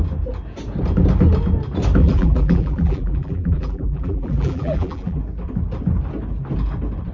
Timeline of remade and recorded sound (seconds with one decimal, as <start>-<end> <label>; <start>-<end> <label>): 0.0-2.0 recorded; 2.0-5.2 remade; 5.2-7.1 recorded